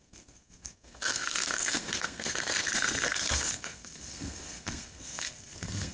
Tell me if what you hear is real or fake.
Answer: fake